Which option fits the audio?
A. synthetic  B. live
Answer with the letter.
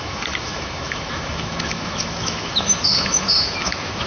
A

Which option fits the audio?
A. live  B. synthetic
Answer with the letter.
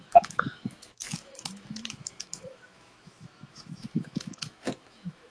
B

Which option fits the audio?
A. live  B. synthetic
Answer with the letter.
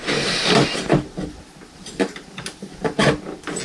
A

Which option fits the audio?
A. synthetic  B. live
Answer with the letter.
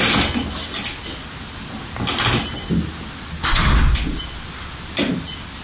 B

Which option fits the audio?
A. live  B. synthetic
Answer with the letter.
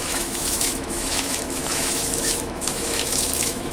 B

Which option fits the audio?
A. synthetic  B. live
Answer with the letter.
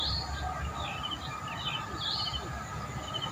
B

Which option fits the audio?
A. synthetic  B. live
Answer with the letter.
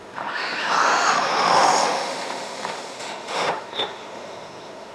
A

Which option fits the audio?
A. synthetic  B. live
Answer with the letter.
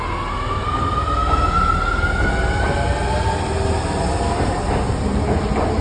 B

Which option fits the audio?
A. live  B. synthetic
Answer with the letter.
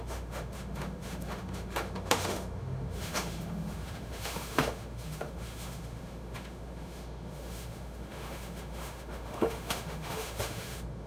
B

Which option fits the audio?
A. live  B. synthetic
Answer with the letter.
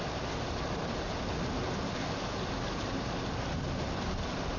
A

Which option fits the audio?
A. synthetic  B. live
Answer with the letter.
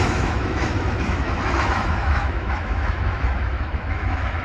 A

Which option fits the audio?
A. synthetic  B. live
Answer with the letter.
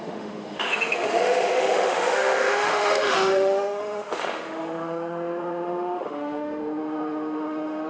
A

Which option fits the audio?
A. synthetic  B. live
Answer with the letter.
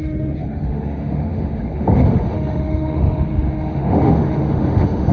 A